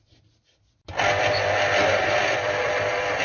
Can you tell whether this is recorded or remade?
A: recorded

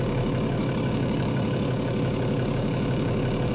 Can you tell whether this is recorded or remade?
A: remade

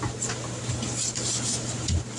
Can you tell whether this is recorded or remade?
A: recorded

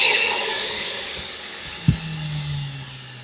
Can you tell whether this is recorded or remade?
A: remade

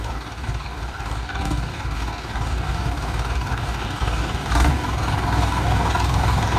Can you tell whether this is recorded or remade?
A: remade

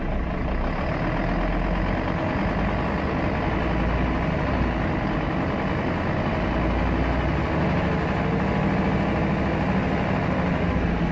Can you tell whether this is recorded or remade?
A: recorded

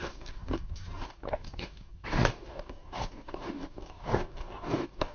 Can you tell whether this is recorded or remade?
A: remade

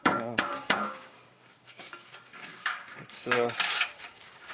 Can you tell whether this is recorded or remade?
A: remade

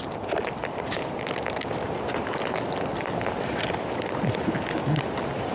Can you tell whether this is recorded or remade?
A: recorded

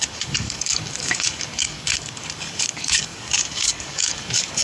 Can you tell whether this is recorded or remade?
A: remade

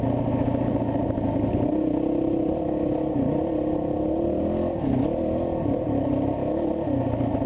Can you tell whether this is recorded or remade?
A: recorded